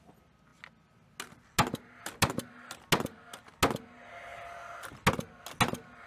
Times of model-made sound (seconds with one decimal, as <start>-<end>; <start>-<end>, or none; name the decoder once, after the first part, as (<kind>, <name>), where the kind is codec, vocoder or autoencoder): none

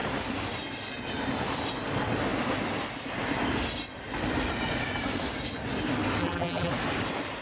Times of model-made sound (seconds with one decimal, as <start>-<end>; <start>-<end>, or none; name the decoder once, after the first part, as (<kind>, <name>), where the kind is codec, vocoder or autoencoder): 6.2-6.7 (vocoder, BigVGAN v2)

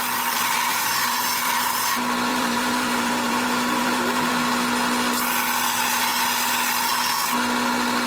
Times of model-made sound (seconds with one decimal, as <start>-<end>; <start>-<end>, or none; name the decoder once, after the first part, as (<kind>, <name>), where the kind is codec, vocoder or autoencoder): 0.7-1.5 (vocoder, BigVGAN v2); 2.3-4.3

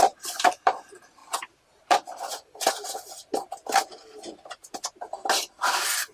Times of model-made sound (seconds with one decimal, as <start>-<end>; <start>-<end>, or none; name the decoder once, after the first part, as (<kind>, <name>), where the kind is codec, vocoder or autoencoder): 0.0-3.3 (vocoder, BigVGAN v2); 5.5-6.1

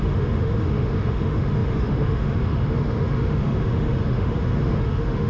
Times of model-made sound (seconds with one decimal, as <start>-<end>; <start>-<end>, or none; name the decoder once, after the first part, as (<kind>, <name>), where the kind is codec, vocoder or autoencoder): 0.0-5.3 (autoencoder, DAC-VAE)

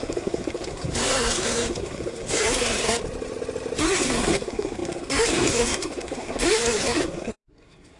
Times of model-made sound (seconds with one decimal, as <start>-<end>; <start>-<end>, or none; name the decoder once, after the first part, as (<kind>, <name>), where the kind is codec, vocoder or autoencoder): 0.0-3.0 (codec, SNAC); 3.8-8.0

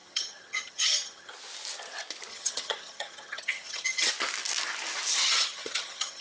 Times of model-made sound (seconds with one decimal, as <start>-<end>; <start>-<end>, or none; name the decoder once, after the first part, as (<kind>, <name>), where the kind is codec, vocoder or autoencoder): 0.0-1.3 (vocoder, HiFi-GAN); 2.3-4.1; 5.1-6.2

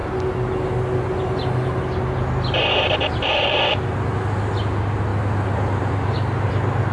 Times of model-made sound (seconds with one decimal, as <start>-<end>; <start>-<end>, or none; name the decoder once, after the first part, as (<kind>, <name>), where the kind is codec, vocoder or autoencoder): none